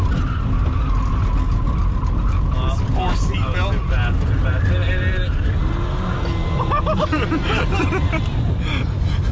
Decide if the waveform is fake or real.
real